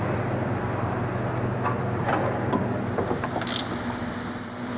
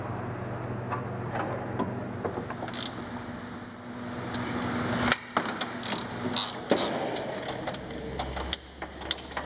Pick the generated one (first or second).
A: first